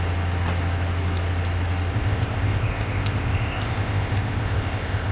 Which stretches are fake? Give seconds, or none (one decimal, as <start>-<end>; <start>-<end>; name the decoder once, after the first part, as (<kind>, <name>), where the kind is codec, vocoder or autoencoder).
1.9-5.1 (codec, ZipCodec)